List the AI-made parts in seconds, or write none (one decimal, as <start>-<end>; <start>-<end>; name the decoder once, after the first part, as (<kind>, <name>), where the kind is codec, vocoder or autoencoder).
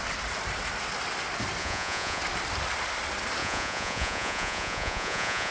1.6-2.2 (vocoder, Vocos); 3.4-5.5